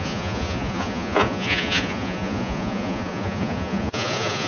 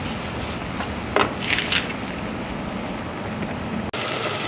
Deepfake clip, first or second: first